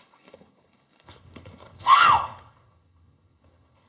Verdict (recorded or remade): remade